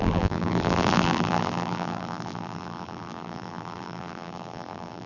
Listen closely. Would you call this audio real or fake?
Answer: fake